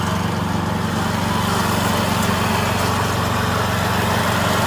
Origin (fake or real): real